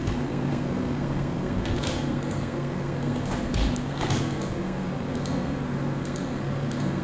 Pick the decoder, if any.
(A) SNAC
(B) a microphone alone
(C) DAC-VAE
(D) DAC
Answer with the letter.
A